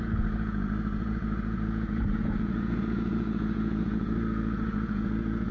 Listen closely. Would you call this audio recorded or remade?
remade